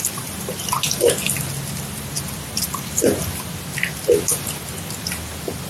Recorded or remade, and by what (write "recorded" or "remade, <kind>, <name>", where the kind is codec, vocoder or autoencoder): recorded